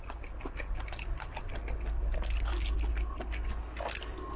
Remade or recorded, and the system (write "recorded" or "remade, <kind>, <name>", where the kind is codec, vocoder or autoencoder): recorded